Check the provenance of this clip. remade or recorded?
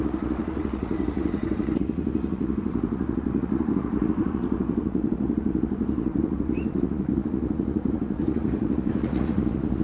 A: remade